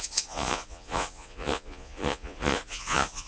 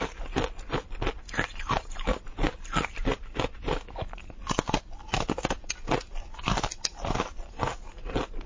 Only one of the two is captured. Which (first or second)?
second